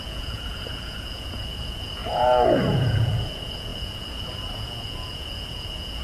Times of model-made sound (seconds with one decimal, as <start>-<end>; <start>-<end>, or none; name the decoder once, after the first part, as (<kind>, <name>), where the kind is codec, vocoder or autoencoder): 0.0-6.0 (vocoder, Vocos)